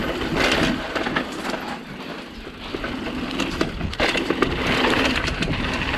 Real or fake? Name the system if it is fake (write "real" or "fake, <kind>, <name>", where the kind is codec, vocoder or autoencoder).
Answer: real